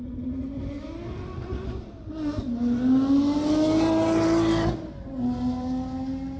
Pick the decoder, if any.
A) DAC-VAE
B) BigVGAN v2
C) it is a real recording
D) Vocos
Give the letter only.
C